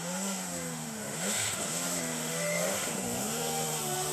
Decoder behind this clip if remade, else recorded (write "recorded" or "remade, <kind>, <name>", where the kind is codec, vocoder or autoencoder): remade, autoencoder, DAC-VAE